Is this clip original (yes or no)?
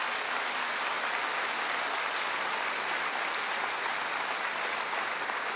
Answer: yes